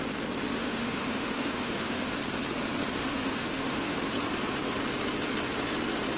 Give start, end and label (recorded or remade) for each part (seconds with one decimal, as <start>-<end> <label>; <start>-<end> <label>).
0.0-0.6 recorded; 0.6-2.1 remade; 2.1-3.0 recorded; 3.0-4.0 remade; 4.0-6.2 recorded